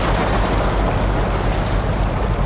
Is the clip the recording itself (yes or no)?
yes